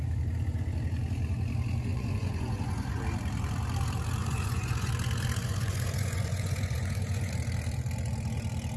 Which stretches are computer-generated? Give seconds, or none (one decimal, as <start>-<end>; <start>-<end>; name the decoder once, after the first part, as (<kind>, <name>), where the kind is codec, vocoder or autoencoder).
1.9-3.0 (vocoder, Vocos); 4.2-4.9; 5.4-7.3